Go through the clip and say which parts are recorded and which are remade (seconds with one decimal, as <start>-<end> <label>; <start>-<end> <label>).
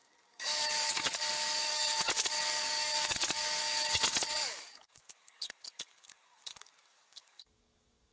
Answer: 0.0-8.1 remade